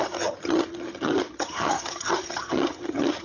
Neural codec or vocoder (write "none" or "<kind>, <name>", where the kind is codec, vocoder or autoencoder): vocoder, HiFi-GAN